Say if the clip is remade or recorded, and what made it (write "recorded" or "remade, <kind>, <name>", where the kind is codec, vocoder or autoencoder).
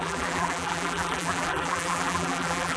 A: remade, vocoder, BigVGAN v2